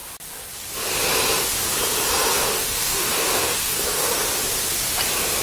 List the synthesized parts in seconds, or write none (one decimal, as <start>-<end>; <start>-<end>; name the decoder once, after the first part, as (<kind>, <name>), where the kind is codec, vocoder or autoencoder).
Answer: 2.3-4.1 (codec, DAC)